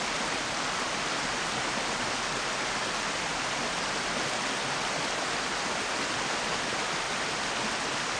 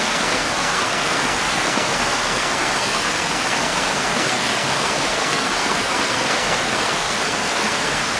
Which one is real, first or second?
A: first